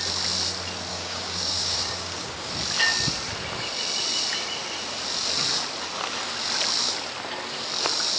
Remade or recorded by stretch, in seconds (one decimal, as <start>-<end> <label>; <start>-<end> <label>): 0.0-0.9 recorded; 0.9-2.5 remade; 2.5-8.2 recorded